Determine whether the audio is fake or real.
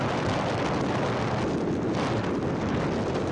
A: real